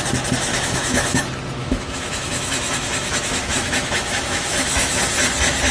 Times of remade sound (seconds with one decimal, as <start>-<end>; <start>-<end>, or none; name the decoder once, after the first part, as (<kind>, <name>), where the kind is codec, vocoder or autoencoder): 0.5-1.2 (autoencoder, DAC-VAE); 1.6-5.0